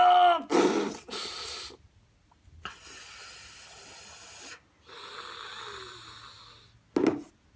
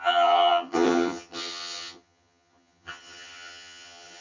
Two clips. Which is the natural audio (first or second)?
first